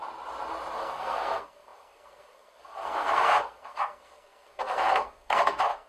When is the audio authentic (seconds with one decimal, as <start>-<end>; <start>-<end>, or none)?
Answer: 0.0-0.8